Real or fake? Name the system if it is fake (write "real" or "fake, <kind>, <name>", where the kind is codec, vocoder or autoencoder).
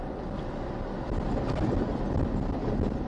real